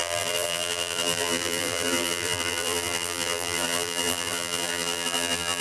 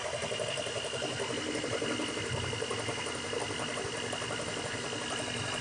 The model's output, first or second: first